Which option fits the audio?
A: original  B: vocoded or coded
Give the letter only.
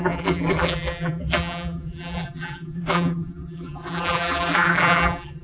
B